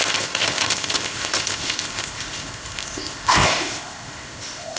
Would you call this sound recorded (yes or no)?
no